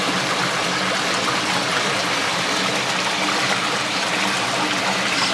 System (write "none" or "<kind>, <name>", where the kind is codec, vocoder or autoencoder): none